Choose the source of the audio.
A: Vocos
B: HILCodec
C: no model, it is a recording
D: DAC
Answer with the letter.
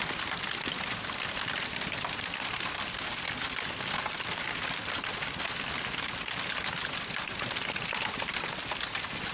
C